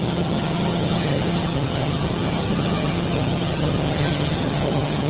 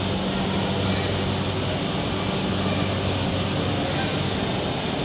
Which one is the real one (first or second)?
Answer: second